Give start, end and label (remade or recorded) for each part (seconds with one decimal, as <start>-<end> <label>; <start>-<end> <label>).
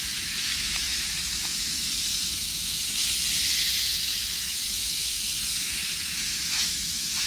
0.0-3.0 remade; 3.0-3.8 recorded; 3.8-7.3 remade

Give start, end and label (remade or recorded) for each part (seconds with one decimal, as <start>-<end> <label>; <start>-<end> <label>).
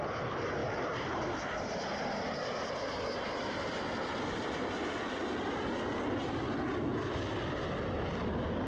0.0-8.7 recorded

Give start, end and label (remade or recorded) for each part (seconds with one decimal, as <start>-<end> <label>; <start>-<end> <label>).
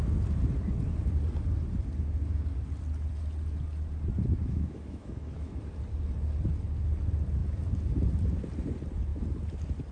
0.0-4.4 recorded; 4.4-5.6 remade; 5.6-9.9 recorded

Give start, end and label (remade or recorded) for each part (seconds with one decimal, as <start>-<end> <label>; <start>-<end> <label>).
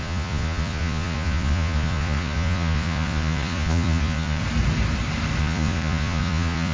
0.0-4.4 remade; 4.4-5.4 recorded; 5.4-6.7 remade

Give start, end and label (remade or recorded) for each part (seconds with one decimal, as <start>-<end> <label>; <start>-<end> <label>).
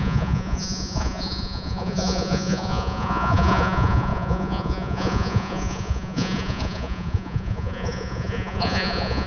0.0-9.3 remade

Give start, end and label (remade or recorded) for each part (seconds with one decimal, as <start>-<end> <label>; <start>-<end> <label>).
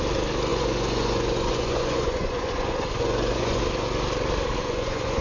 0.0-0.5 recorded; 0.5-3.6 remade; 3.6-4.6 recorded; 4.6-5.2 remade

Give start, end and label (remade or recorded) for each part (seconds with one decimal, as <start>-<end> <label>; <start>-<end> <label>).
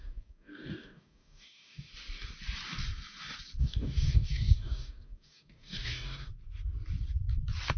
0.0-1.9 remade; 1.9-3.6 recorded; 3.6-6.3 remade; 6.3-7.8 recorded